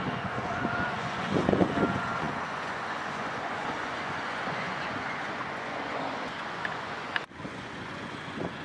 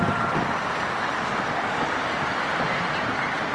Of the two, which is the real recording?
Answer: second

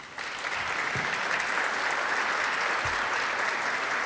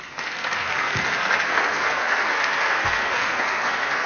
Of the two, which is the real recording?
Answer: first